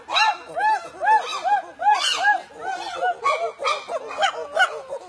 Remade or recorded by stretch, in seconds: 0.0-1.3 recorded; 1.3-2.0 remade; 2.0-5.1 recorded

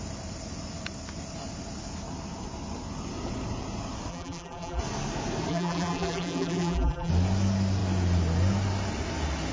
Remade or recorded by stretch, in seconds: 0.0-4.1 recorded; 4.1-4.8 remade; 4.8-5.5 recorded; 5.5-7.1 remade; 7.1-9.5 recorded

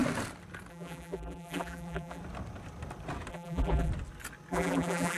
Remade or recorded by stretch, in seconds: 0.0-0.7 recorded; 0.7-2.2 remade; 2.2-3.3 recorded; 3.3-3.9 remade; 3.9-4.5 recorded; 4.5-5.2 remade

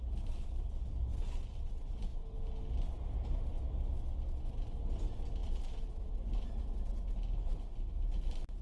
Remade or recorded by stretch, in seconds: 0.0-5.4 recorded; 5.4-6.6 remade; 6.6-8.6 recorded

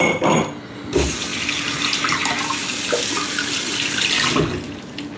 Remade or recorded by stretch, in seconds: 0.0-5.2 recorded

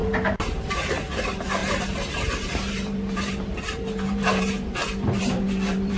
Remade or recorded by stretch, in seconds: 0.0-6.0 remade

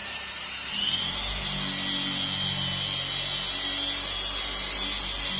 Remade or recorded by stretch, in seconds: 0.0-1.4 remade; 1.4-5.4 recorded

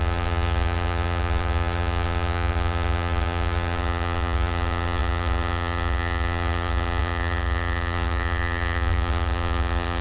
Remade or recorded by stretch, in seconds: 0.0-10.0 remade